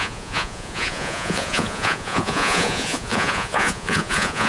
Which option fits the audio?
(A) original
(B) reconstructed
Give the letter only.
B